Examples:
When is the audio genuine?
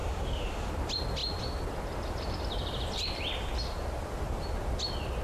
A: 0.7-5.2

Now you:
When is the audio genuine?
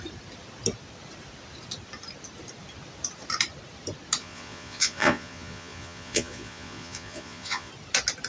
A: 0.0-4.2; 7.7-8.3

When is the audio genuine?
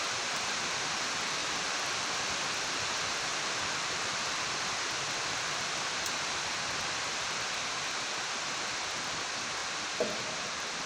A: 0.0-1.4; 2.1-3.3; 4.4-9.6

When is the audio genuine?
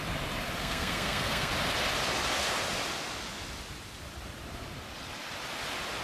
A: 0.0-0.6; 1.5-6.0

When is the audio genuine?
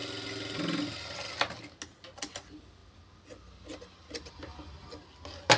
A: 0.0-5.6